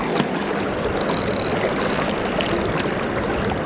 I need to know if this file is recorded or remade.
recorded